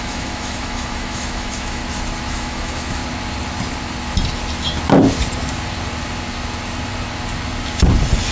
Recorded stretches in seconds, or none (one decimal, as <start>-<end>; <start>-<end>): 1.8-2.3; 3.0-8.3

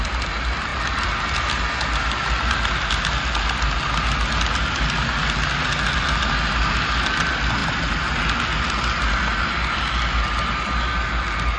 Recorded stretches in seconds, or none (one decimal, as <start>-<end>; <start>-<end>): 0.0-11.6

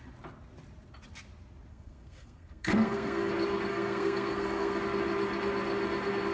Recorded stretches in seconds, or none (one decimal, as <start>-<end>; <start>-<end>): 0.0-1.7; 3.3-3.7; 4.8-6.3

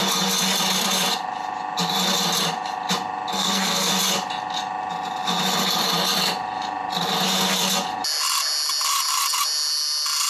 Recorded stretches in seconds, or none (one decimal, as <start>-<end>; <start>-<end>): 0.0-3.3; 3.9-10.3

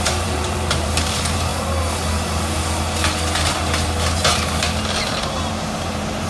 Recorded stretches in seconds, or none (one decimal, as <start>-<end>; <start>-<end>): 1.5-4.9